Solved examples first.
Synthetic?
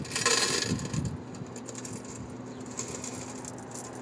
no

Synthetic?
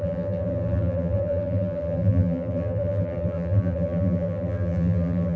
yes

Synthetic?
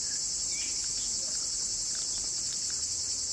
no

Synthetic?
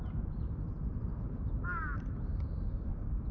yes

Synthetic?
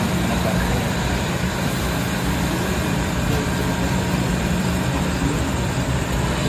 yes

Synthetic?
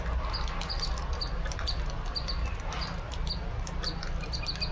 no